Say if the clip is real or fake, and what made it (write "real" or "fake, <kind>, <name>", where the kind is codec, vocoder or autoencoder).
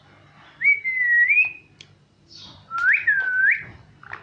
real